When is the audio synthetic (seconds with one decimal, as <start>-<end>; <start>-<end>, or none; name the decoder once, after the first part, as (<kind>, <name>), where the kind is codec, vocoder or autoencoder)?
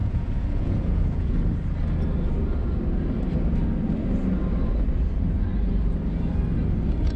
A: 0.0-1.4 (vocoder, Vocos)